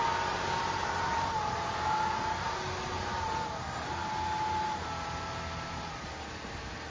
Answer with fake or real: real